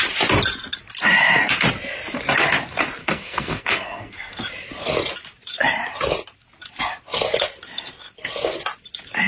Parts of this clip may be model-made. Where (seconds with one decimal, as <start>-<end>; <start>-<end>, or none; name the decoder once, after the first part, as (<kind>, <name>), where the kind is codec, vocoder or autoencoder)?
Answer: 3.0-4.3 (codec, SNAC)